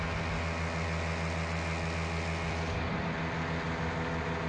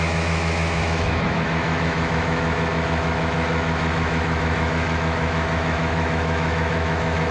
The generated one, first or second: second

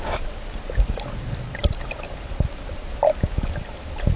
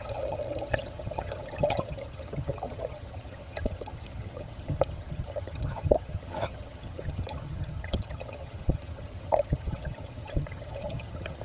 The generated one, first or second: second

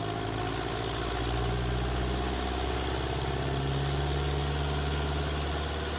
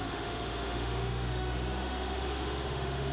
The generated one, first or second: second